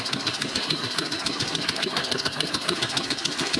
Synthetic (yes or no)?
yes